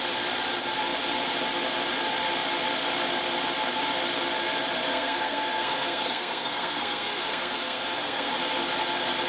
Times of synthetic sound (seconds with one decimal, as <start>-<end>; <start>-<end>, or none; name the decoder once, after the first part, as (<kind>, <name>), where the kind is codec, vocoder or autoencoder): 4.9-8.3 (codec, SNAC)